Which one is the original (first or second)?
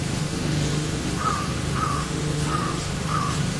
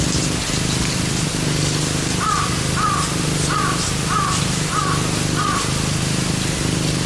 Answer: second